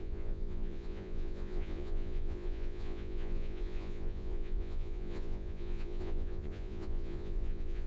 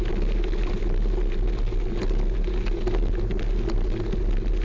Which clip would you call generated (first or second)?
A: first